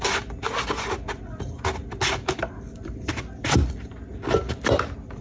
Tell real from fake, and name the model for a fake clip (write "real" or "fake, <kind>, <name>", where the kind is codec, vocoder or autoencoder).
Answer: real